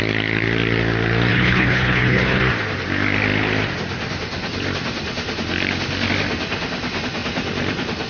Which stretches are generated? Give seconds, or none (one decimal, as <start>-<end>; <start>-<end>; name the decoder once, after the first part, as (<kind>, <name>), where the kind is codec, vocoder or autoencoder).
1.3-2.4 (codec, HILCodec)